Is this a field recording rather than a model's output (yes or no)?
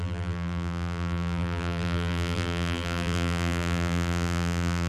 no